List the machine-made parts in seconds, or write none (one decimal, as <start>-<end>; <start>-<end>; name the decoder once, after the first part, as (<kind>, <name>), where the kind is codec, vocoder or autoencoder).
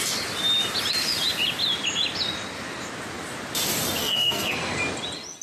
4.0-4.8 (codec, SNAC)